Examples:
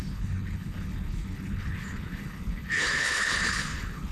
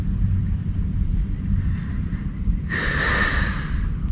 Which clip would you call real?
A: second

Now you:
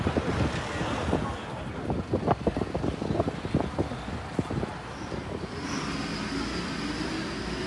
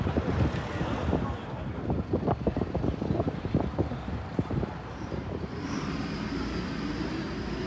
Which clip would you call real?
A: first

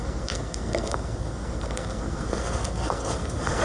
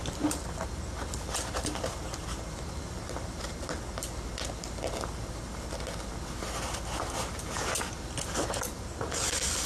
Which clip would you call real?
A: second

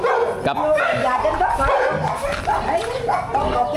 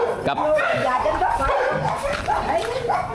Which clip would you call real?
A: first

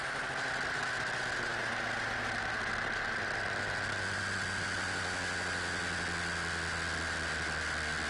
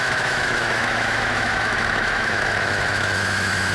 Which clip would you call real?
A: first